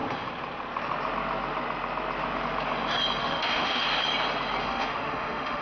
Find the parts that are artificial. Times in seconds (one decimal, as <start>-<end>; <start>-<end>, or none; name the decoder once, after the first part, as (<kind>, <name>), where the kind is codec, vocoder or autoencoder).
3.2-3.8 (autoencoder, DAC-VAE); 4.6-5.6